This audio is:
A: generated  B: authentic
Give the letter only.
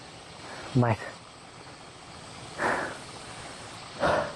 B